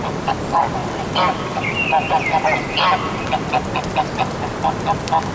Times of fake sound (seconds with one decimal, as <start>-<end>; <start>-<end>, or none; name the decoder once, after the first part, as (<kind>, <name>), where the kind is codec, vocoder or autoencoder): none